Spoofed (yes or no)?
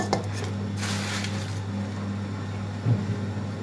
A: no